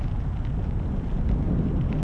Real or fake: real